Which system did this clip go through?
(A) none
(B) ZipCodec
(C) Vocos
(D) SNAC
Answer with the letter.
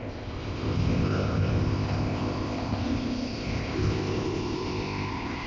B